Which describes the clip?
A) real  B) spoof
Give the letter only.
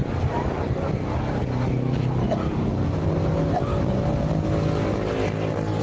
A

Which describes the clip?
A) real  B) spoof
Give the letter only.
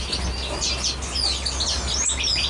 A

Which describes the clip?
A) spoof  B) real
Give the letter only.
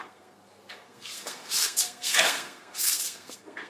A